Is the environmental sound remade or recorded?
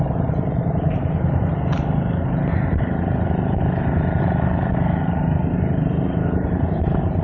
remade